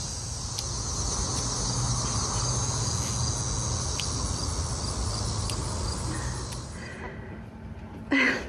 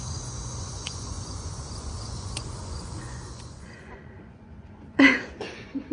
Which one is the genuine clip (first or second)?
first